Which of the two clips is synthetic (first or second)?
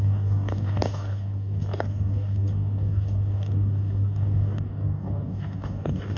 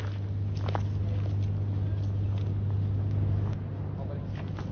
first